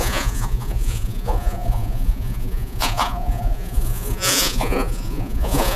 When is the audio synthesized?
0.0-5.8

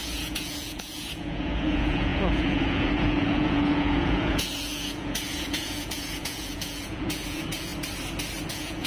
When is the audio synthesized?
0.0-7.7; 8.5-8.9

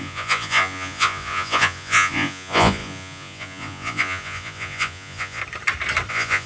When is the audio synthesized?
0.0-5.4; 6.1-6.5

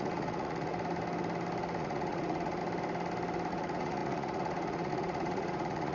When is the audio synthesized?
0.0-0.7; 1.8-2.6; 3.5-5.9

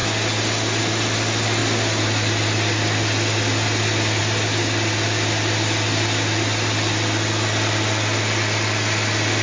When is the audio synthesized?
none

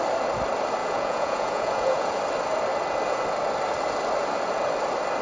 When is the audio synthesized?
0.8-2.1

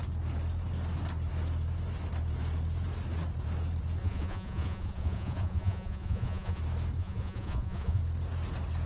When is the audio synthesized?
4.0-6.6; 7.0-8.0

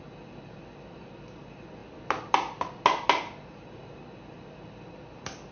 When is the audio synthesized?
none